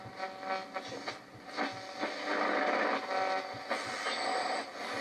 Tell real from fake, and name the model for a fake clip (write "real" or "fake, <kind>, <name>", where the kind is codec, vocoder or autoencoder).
real